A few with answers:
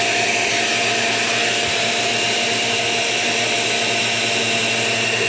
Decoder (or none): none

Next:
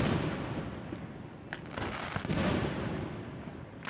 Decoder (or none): none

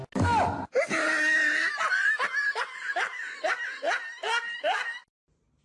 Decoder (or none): none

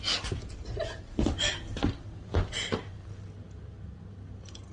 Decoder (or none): none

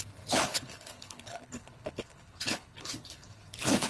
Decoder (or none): codec, HILCodec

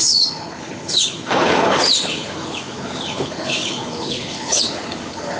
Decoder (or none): codec, HILCodec